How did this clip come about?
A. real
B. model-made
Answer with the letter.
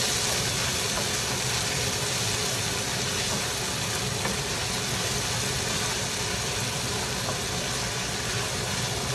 A